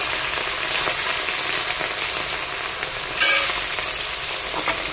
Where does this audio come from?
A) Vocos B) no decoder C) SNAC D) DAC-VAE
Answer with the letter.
B